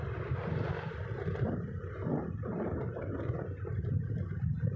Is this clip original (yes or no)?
yes